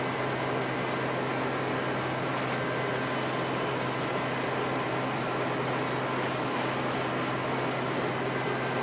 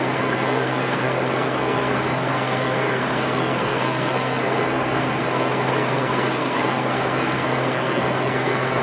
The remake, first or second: second